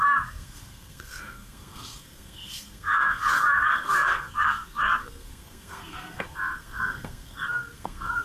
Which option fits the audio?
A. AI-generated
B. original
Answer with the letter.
A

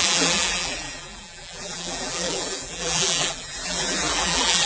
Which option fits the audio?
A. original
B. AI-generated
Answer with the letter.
B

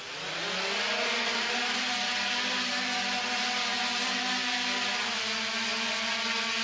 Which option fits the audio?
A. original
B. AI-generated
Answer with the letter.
A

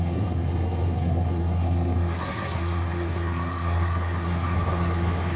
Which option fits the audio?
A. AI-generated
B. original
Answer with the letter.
A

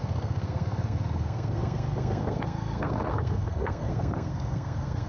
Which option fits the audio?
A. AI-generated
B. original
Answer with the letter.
A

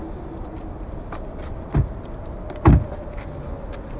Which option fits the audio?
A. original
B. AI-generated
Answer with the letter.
A